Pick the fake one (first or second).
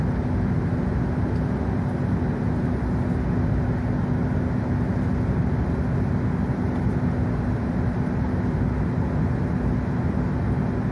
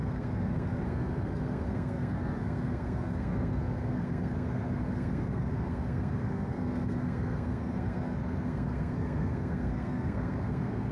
second